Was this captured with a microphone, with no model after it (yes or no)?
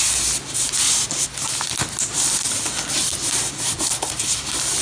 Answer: yes